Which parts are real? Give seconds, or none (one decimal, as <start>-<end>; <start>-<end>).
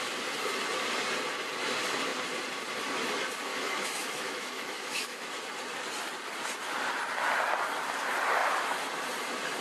0.0-3.5; 5.3-9.6